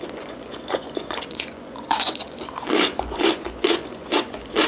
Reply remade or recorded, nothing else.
remade